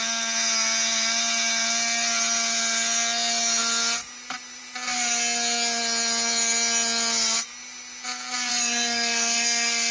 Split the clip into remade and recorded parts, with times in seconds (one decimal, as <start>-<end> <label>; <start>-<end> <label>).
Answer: 0.0-8.5 recorded; 8.5-9.9 remade